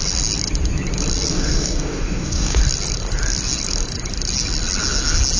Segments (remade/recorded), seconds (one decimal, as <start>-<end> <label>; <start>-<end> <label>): 0.0-1.3 recorded; 1.3-2.6 remade; 2.6-5.4 recorded